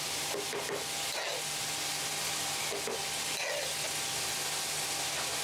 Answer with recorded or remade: recorded